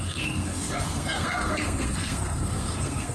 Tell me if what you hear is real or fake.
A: fake